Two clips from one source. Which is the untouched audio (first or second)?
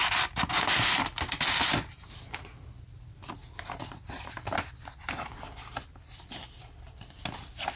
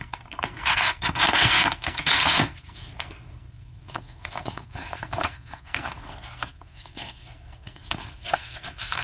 first